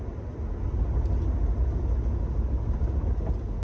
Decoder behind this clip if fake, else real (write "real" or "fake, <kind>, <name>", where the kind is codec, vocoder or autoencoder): real